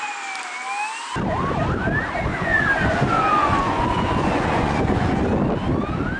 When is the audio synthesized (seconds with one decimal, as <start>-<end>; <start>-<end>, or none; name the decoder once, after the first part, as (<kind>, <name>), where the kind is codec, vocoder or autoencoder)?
2.3-5.2 (vocoder, Vocos)